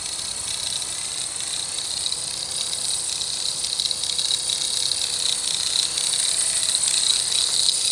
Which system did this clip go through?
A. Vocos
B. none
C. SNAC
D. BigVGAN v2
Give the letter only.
B